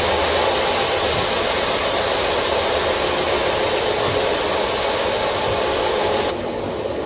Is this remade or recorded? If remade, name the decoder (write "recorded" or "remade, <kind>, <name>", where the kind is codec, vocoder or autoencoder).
recorded